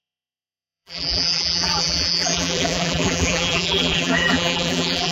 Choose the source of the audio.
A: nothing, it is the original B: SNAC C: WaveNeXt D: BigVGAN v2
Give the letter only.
D